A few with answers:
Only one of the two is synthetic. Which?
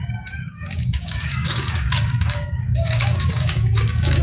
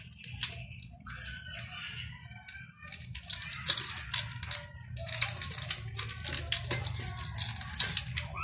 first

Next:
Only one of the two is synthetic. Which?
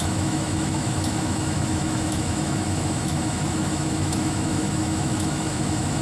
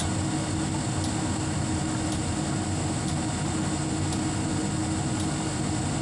first